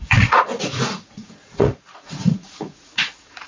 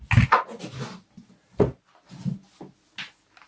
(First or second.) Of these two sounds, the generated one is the first